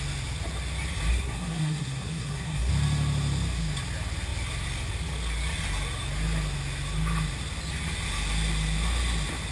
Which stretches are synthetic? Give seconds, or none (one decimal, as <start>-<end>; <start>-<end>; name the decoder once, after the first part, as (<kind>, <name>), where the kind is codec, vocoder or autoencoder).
1.1-2.7 (codec, SNAC)

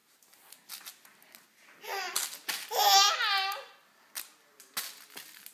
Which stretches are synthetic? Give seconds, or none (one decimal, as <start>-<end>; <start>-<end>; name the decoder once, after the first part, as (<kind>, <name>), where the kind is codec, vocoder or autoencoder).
none

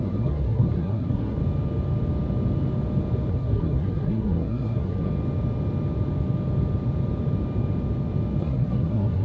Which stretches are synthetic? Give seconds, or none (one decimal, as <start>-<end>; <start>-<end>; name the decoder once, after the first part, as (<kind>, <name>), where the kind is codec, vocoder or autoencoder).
0.0-1.4 (codec, SNAC); 3.3-5.1; 8.4-9.2

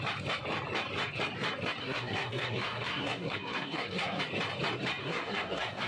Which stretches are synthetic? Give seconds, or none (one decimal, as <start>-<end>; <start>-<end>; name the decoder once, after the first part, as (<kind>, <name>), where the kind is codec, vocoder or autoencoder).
1.8-4.2 (codec, SNAC); 5.0-5.9

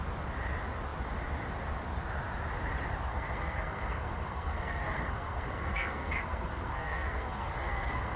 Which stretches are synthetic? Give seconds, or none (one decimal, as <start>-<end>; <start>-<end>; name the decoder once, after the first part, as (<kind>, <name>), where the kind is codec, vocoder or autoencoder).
3.1-8.2 (codec, SNAC)

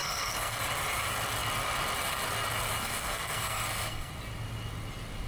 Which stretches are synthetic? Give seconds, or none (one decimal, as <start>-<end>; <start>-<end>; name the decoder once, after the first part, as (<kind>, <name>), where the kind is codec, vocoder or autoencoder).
0.0-0.6 (codec, SNAC); 2.8-4.1

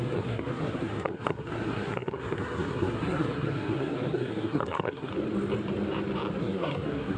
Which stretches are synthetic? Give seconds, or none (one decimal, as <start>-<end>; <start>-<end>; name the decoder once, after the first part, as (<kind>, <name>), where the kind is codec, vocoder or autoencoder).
0.0-5.1 (codec, SNAC); 6.4-7.2